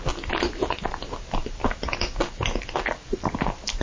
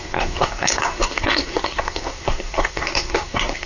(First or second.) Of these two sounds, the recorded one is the first